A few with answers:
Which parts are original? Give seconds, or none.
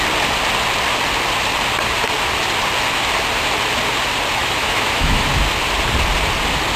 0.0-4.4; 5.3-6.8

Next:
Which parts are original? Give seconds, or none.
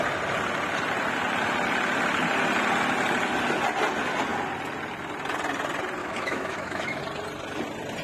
0.0-6.0; 7.0-8.0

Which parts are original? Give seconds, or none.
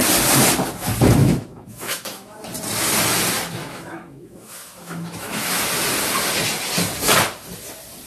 0.0-1.2; 2.4-3.6; 5.6-8.1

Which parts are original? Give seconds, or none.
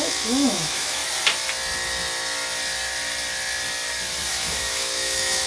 1.0-4.3